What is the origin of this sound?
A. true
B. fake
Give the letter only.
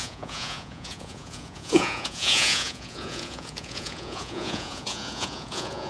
B